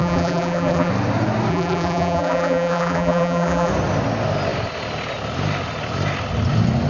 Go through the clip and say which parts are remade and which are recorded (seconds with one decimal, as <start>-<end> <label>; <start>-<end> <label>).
0.0-0.9 remade; 0.9-1.5 recorded; 1.5-3.7 remade; 3.7-6.9 recorded